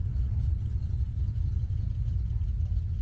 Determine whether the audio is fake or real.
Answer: real